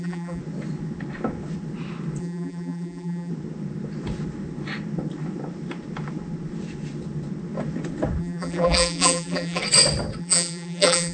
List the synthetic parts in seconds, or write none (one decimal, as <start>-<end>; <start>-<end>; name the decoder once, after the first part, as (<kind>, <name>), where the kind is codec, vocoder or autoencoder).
0.0-0.4 (vocoder, BigVGAN v2); 2.2-3.3; 8.2-9.6; 10.2-11.1